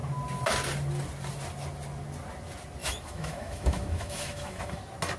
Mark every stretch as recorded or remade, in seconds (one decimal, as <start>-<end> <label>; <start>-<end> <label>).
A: 0.0-2.8 recorded; 2.8-4.8 remade; 4.8-5.2 recorded